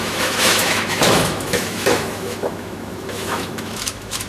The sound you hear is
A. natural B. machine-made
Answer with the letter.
B